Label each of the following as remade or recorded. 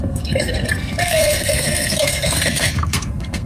remade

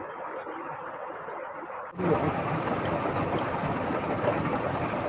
recorded